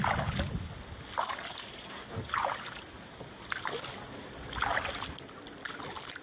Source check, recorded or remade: recorded